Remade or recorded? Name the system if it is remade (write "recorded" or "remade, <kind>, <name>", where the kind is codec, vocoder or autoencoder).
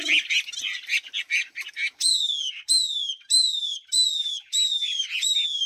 recorded